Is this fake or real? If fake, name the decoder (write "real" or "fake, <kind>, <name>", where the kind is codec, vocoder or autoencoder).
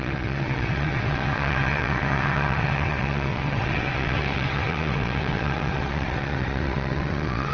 fake, vocoder, WaveNeXt